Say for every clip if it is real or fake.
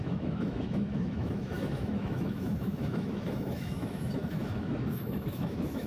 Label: fake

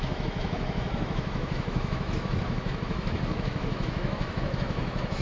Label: fake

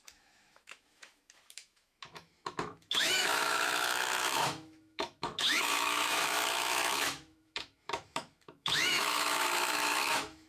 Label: fake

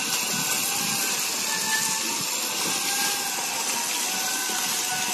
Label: real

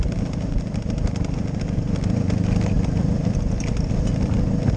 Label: real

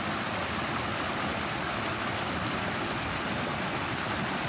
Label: real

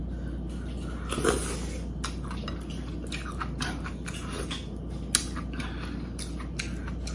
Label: real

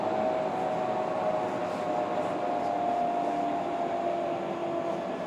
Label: real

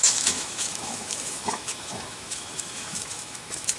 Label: fake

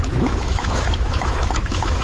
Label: fake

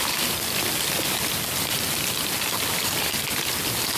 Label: real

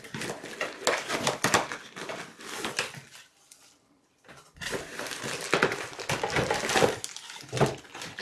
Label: real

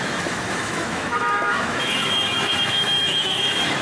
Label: fake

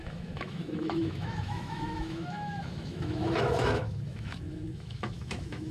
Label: fake